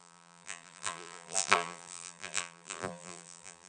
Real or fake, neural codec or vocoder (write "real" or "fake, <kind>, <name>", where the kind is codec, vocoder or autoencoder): fake, vocoder, BigVGAN v2